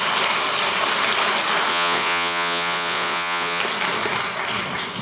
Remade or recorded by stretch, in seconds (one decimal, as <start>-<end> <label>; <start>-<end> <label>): 0.0-1.7 recorded; 1.7-3.6 remade; 3.6-5.0 recorded